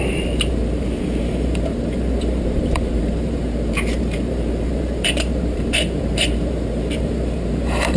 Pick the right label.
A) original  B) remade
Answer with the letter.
B